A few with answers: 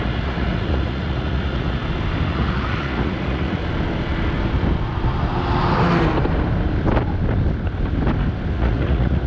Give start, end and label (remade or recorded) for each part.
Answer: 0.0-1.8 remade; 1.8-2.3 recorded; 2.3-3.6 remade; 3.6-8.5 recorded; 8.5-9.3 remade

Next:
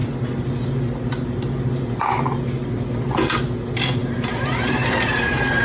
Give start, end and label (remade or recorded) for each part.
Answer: 0.0-5.6 recorded

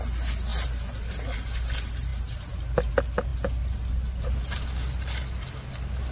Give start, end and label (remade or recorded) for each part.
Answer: 0.0-6.1 recorded

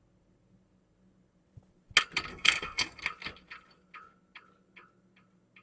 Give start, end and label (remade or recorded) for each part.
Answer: 0.0-2.3 recorded; 2.3-3.0 remade; 3.0-5.6 recorded

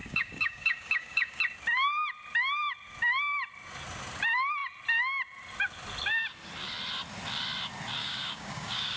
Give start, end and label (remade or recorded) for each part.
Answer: 0.0-1.4 remade; 1.4-8.0 recorded; 8.0-9.0 remade

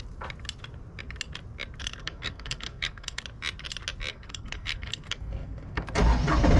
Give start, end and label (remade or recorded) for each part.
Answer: 0.0-1.8 recorded; 1.8-3.2 remade; 3.2-4.1 recorded; 4.1-5.9 remade; 5.9-6.6 recorded

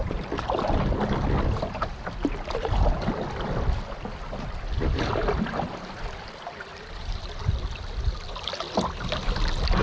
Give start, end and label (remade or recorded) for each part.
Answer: 0.0-6.7 recorded; 6.7-7.5 remade; 7.5-9.8 recorded